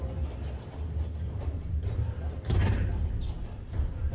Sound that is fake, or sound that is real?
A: real